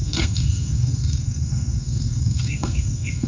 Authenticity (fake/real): fake